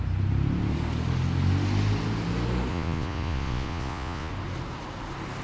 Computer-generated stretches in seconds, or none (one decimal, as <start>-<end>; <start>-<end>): 2.7-4.3